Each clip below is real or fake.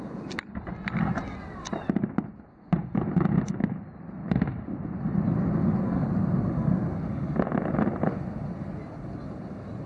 real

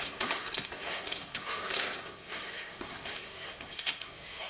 fake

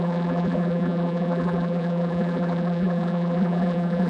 fake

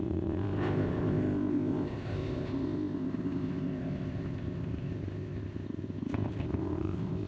fake